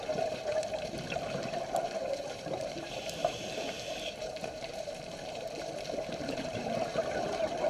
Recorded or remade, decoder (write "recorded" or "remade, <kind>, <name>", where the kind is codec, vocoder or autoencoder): remade, vocoder, BigVGAN v2